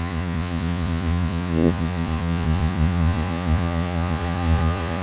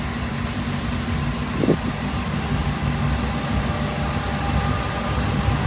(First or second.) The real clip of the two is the second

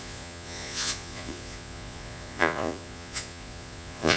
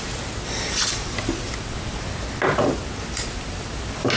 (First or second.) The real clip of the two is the second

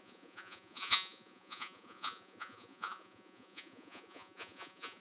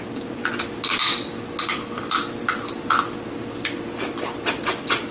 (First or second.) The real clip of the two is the second